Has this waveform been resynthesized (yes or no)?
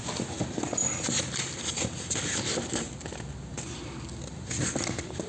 no